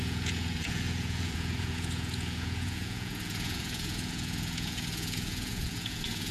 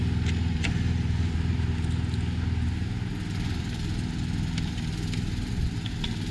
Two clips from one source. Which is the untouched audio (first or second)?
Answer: second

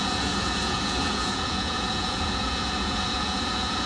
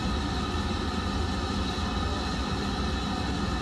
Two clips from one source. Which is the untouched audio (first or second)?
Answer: second